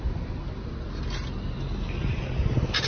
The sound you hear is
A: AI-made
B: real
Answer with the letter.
B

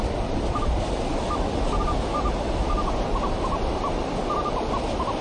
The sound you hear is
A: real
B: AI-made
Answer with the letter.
A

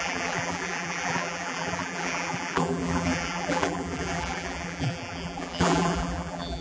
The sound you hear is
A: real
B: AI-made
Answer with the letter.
B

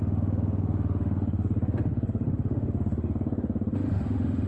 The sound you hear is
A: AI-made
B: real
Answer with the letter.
A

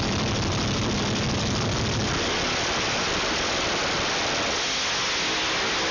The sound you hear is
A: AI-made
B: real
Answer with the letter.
B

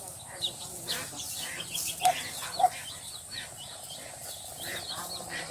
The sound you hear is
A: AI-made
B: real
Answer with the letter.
A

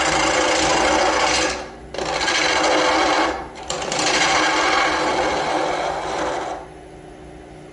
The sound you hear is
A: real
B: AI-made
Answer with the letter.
A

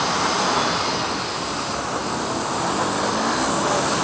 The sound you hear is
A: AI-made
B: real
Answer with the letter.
B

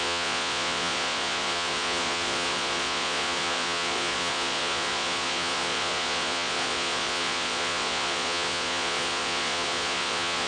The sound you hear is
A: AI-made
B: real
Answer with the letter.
A